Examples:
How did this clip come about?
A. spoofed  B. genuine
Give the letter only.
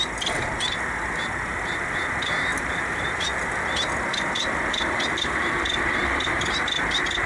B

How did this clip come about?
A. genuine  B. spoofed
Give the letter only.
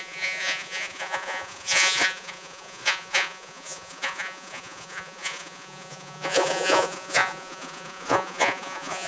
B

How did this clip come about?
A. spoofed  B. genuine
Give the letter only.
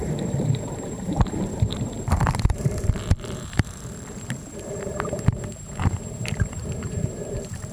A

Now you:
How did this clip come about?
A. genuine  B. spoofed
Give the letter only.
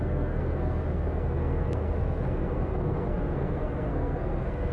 B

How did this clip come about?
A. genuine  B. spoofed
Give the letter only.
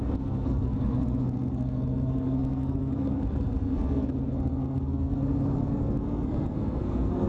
B